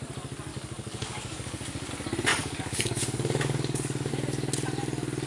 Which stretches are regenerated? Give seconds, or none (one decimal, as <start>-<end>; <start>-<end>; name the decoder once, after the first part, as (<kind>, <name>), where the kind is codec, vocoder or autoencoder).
0.5-1.9 (codec, DAC); 2.3-4.1